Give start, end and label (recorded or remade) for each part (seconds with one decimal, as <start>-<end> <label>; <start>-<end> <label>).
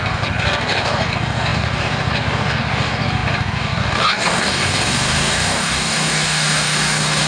0.0-7.3 remade